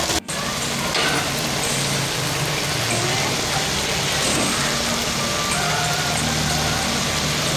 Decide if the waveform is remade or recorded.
recorded